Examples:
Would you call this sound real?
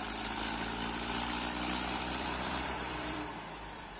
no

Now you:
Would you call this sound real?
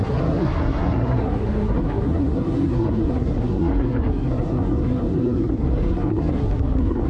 no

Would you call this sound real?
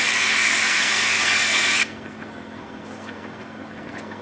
no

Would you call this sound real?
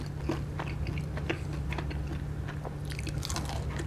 yes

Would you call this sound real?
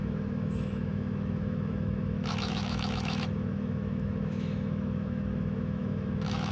no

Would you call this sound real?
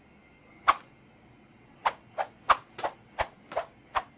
yes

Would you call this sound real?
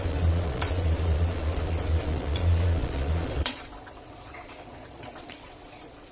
no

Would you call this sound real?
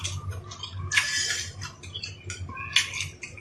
yes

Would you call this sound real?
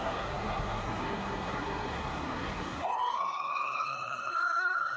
no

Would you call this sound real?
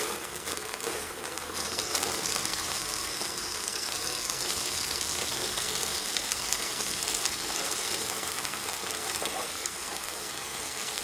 no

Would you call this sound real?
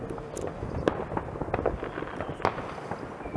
yes